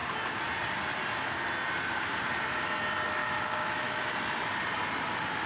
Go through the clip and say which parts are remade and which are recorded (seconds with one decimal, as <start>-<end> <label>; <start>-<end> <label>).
0.0-3.2 recorded; 3.2-4.0 remade; 4.0-5.5 recorded